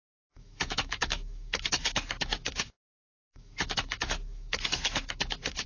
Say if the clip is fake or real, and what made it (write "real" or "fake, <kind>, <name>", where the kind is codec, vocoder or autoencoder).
fake, autoencoder, DAC-VAE